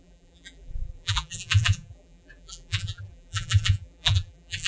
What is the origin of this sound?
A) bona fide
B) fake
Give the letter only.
B